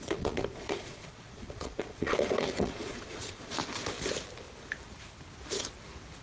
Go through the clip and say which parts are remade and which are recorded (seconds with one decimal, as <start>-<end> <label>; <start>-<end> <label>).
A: 0.0-3.6 remade; 3.6-6.2 recorded